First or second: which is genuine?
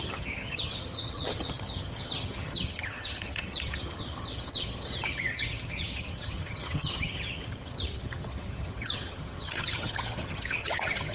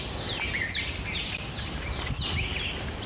second